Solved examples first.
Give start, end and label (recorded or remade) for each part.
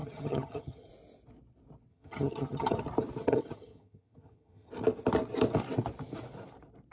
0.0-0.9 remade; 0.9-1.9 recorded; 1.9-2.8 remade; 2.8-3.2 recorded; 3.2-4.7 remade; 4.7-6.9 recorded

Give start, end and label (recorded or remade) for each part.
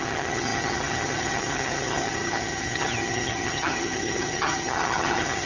0.0-5.5 remade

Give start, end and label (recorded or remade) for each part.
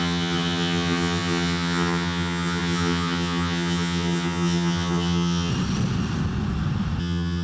0.0-5.5 remade; 5.5-7.0 recorded; 7.0-7.4 remade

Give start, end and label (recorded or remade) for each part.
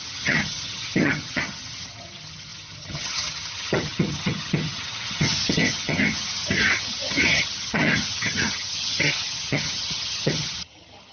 0.0-11.1 remade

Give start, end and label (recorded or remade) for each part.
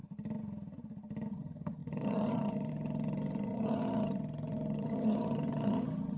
0.0-1.3 recorded; 1.3-6.2 remade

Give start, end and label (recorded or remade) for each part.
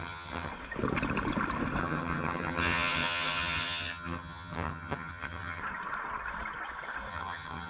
0.0-0.5 remade; 0.5-1.8 recorded; 1.8-5.6 remade; 5.6-7.1 recorded; 7.1-7.7 remade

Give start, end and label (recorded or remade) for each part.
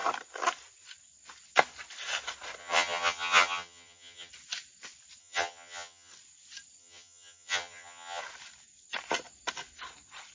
0.0-2.6 recorded; 2.6-4.3 remade; 4.3-5.2 recorded; 5.2-6.1 remade; 6.1-6.8 recorded; 6.8-8.2 remade; 8.2-10.3 recorded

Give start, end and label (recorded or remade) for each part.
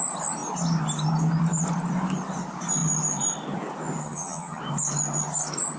0.0-4.0 recorded; 4.0-4.6 remade; 4.6-5.8 recorded